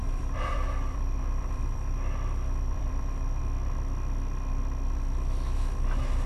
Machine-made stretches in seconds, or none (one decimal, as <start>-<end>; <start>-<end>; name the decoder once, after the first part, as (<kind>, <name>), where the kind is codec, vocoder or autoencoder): 0.0-3.4 (vocoder, BigVGAN v2)